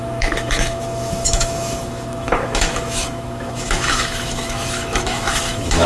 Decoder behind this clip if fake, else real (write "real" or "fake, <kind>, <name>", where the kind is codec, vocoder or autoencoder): fake, autoencoder, DAC-VAE